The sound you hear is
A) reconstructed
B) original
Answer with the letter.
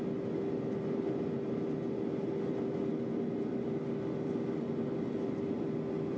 B